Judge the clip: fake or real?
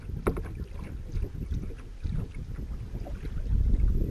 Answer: real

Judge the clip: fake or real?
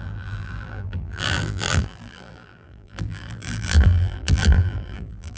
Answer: fake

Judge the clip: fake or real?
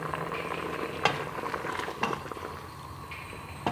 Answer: real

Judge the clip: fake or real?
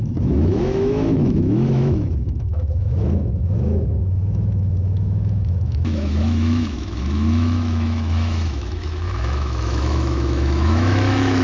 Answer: fake